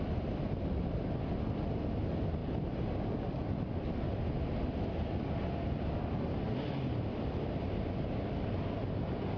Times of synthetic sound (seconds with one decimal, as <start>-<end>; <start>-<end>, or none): none